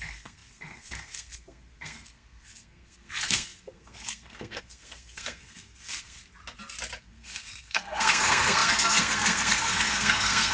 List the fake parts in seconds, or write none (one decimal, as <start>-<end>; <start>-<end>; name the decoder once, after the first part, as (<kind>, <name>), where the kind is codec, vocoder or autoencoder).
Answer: 0.0-6.2 (codec, SNAC); 7.0-10.5